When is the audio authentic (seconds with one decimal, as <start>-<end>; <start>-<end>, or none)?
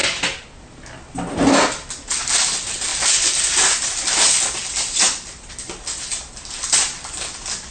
0.0-7.7